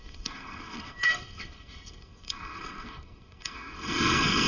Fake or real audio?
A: fake